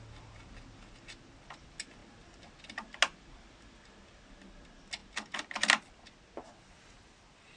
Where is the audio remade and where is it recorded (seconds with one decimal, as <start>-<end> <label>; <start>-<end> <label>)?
0.0-7.6 recorded